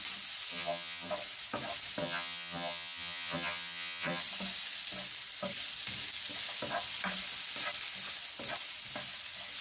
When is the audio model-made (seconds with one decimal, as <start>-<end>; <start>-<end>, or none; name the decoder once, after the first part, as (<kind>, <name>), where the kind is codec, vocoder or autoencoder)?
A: 0.5-1.1 (vocoder, HiFi-GAN); 2.0-4.2